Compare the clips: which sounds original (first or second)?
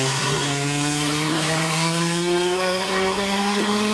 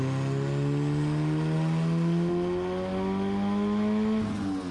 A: second